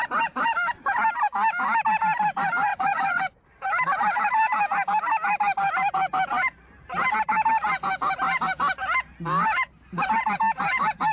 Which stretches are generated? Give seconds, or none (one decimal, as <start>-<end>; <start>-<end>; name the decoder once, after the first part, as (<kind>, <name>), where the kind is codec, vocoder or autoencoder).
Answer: 2.7-3.2 (vocoder, Vocos)